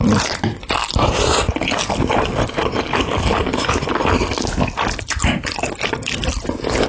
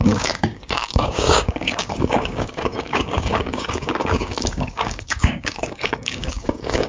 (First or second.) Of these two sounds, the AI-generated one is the second